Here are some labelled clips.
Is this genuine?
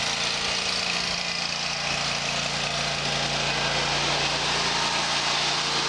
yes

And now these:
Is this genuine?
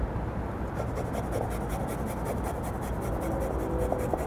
yes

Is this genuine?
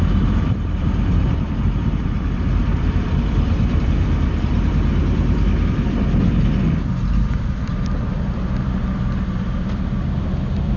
no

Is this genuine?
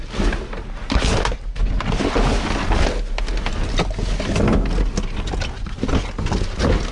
yes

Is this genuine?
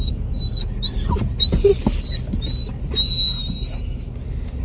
yes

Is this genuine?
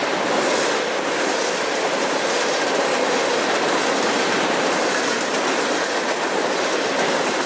yes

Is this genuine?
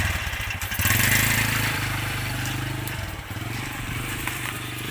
no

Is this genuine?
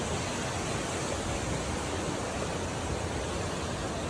yes